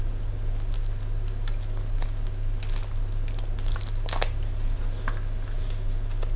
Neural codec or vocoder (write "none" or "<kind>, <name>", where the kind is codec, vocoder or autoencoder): none